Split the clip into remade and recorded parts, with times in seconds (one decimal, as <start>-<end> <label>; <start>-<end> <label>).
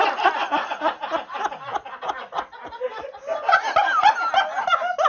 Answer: 0.0-5.1 recorded